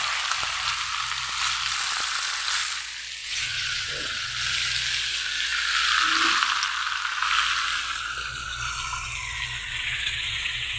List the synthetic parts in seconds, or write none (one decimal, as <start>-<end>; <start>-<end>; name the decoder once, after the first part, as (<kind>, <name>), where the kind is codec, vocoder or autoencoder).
3.2-4.3 (vocoder, WaveNeXt); 9.6-10.8